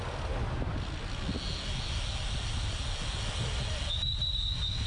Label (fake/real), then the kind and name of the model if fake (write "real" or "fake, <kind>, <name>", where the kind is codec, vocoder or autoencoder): real